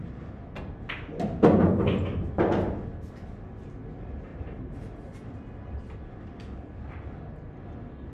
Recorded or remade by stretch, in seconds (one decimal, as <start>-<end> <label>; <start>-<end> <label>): 0.0-4.3 recorded; 4.3-5.0 remade; 5.0-8.1 recorded